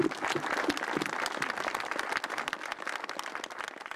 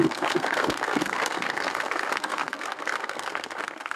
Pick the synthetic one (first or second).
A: second